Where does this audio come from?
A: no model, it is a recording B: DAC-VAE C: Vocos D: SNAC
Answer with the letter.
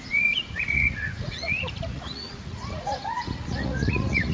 C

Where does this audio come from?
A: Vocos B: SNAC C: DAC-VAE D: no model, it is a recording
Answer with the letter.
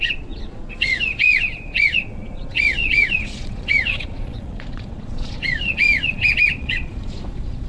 A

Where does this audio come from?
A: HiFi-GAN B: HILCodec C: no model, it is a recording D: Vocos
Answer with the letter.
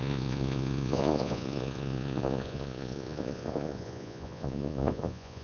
D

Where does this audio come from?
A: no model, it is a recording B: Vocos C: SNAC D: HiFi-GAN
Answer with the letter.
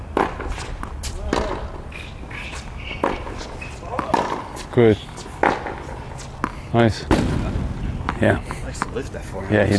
A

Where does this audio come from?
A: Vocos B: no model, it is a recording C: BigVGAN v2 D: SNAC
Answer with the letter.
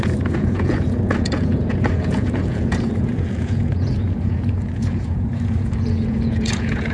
A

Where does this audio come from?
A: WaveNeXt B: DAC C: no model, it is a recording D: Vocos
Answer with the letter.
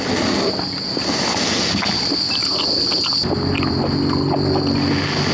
C